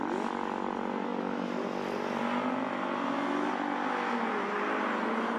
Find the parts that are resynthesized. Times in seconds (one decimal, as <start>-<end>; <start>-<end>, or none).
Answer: none